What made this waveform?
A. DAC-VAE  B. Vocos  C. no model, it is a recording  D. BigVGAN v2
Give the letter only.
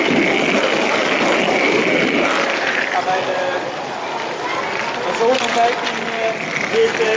C